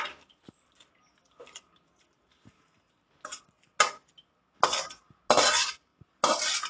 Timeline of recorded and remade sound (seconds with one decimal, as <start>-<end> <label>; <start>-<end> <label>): 0.0-6.7 recorded

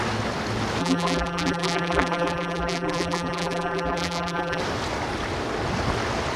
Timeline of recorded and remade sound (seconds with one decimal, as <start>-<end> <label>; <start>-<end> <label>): 0.0-0.8 recorded; 0.8-4.6 remade; 4.6-6.4 recorded